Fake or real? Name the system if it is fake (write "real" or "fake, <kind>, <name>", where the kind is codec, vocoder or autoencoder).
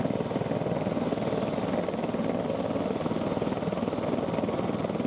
real